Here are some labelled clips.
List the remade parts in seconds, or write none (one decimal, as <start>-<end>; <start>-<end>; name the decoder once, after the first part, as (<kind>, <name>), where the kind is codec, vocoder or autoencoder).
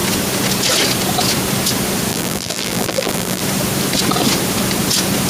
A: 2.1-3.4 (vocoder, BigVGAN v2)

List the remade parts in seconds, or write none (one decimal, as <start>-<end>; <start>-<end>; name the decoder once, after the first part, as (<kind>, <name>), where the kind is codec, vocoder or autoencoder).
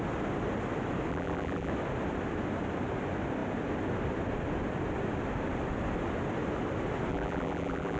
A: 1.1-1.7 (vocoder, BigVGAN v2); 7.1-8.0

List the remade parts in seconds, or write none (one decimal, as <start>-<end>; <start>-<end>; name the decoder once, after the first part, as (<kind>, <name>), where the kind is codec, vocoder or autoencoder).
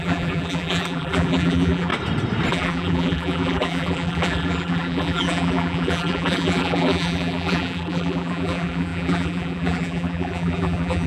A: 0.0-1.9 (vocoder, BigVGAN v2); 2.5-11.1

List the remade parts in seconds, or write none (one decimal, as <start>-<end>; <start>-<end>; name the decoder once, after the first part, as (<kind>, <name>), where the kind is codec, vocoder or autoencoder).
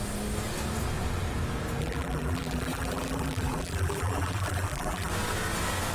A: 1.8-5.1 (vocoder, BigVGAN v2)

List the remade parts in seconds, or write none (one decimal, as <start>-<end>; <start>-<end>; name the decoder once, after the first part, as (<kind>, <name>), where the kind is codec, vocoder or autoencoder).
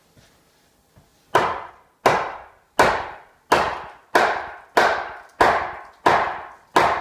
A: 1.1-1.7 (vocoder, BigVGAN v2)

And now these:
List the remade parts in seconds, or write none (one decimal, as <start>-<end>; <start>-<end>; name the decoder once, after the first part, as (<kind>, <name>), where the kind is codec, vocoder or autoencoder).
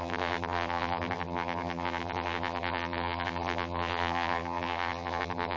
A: 0.0-5.6 (vocoder, BigVGAN v2)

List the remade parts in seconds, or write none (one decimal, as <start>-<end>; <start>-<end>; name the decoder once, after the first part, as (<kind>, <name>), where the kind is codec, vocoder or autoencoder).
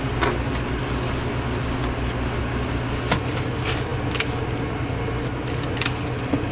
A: none